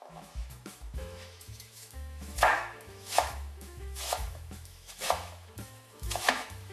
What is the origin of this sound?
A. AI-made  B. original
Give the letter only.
A